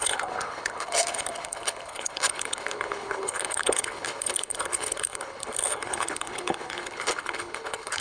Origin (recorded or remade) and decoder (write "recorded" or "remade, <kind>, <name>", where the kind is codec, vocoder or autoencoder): remade, codec, HILCodec